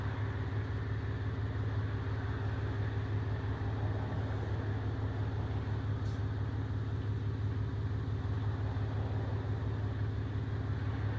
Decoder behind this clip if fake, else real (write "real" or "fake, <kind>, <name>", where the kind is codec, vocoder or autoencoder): real